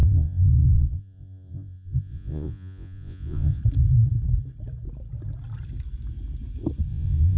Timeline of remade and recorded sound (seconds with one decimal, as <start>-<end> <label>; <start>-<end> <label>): 0.0-3.6 remade; 3.6-6.9 recorded; 6.9-7.4 remade